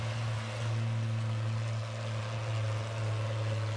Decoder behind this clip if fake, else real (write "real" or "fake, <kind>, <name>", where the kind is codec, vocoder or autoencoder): real